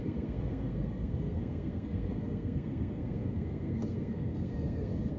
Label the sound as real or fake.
fake